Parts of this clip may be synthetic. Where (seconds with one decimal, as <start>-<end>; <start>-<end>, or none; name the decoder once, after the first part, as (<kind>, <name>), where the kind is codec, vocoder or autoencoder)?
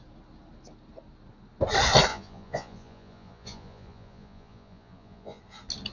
2.1-5.4 (vocoder, Vocos)